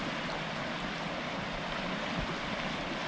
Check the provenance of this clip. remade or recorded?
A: recorded